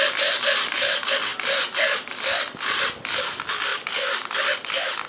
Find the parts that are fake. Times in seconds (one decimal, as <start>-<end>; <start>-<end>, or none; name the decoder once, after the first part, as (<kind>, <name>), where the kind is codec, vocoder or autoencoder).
none